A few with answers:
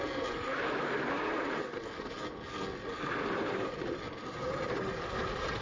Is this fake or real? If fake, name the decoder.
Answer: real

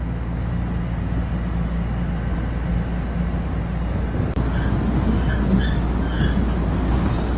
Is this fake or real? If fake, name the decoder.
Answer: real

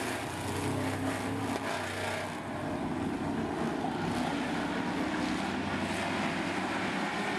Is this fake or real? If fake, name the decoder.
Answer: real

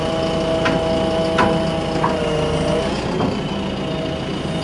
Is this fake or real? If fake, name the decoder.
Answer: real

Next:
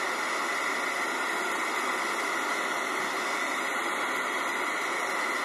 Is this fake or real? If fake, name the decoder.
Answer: real